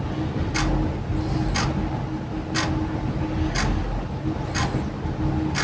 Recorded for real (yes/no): yes